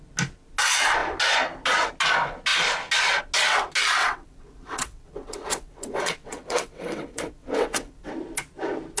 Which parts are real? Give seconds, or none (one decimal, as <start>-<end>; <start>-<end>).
0.0-4.0; 8.1-9.0